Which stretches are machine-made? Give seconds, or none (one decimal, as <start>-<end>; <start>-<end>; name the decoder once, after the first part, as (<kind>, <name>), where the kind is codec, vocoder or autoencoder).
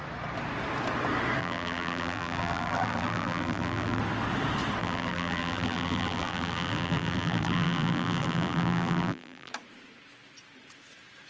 1.4-4.0 (vocoder, BigVGAN v2); 4.8-9.5